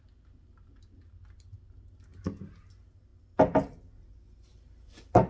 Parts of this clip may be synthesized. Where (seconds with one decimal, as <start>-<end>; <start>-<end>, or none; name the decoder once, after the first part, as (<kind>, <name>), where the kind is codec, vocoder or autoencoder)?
none